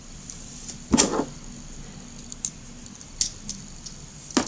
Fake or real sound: real